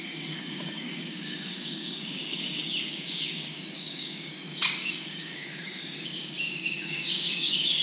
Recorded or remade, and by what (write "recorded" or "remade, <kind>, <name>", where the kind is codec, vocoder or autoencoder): remade, codec, DAC